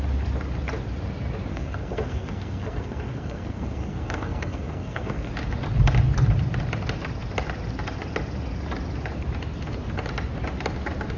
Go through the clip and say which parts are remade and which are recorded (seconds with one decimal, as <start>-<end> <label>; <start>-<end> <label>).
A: 0.0-1.5 recorded; 1.5-5.3 remade; 5.3-11.2 recorded